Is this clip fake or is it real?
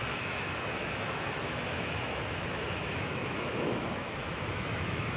fake